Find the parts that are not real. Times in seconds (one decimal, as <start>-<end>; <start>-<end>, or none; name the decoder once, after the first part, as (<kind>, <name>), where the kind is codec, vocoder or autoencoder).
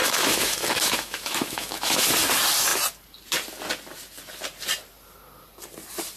0.0-2.1 (autoencoder, DAC-VAE)